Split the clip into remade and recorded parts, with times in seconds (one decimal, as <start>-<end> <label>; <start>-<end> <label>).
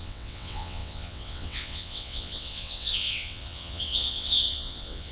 0.0-5.1 remade